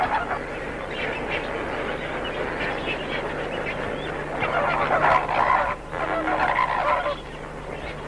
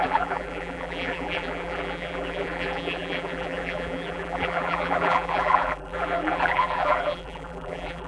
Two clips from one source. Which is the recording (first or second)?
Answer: first